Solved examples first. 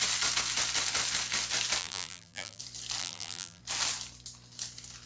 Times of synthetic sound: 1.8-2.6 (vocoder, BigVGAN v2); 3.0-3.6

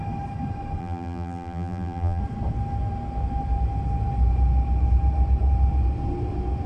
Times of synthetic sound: 0.8-2.2 (vocoder, BigVGAN v2)

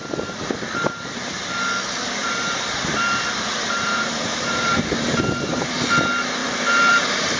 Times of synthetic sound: 2.2-5.7 (vocoder, BigVGAN v2); 6.4-7.4